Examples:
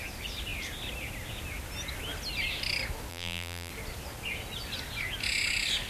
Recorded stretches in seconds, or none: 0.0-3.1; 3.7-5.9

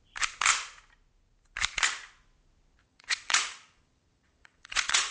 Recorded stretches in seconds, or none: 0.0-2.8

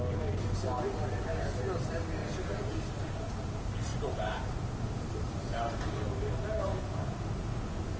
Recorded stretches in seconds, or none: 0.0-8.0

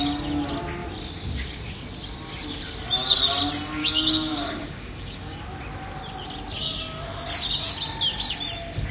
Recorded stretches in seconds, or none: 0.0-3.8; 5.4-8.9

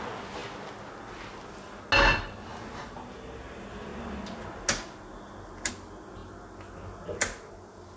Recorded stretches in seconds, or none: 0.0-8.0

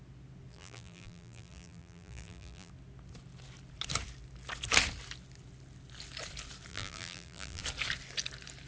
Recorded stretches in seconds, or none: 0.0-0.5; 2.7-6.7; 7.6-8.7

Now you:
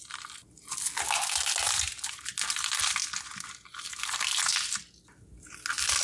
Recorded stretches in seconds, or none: 0.0-6.0